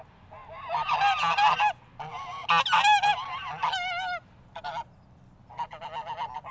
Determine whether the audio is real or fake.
real